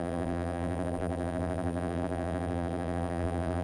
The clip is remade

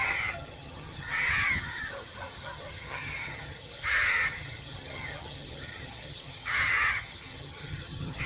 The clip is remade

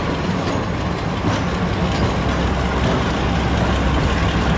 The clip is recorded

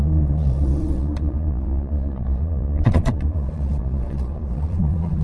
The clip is remade